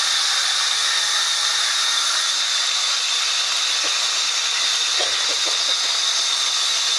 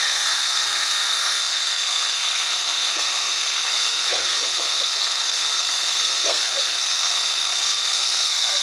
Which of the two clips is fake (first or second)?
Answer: second